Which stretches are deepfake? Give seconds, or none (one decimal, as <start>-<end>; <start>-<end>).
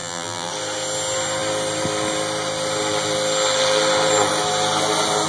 0.0-0.5